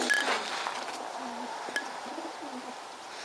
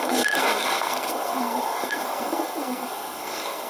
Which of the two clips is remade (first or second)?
second